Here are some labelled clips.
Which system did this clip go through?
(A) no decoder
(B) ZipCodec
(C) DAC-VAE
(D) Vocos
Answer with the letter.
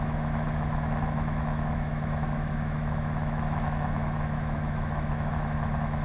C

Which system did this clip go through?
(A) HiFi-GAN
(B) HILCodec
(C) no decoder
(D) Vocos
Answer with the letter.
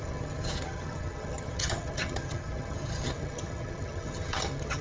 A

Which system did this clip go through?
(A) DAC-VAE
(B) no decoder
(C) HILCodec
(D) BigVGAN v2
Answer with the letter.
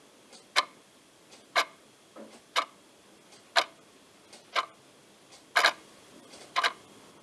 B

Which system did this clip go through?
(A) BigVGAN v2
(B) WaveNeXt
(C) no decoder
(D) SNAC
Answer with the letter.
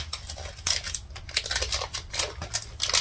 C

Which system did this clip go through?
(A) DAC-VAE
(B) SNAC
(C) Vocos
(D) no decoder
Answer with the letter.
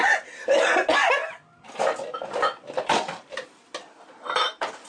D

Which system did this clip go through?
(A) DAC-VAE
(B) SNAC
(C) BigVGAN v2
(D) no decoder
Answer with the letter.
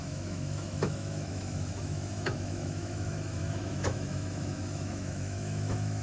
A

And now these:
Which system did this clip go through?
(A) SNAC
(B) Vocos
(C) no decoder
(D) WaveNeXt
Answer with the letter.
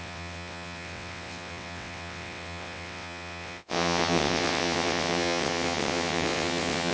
D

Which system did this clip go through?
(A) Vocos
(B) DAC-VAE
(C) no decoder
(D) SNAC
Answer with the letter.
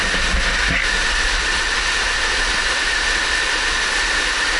C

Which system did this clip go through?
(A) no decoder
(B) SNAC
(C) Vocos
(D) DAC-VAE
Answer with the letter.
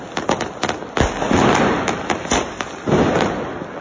A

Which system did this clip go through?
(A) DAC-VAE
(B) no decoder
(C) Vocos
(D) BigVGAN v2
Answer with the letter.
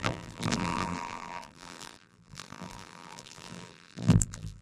D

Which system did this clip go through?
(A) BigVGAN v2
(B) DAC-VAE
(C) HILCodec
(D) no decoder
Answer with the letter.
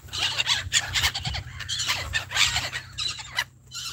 D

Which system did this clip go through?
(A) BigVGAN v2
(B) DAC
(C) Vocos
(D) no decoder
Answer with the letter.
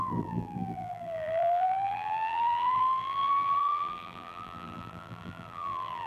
A